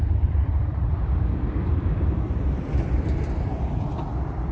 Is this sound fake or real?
fake